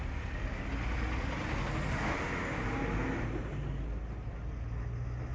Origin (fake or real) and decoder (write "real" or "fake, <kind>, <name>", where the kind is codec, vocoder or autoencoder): real